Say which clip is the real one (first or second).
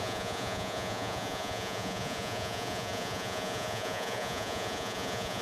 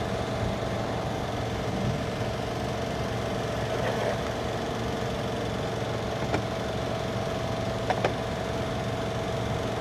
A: second